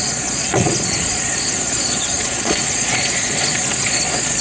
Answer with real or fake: fake